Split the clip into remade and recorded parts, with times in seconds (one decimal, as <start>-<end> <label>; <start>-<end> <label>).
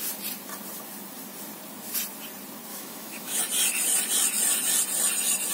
0.0-2.7 recorded; 2.7-3.4 remade; 3.4-5.5 recorded